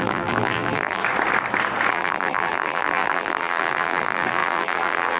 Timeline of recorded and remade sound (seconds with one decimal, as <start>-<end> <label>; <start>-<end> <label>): 0.0-1.0 remade; 1.0-1.9 recorded; 1.9-5.2 remade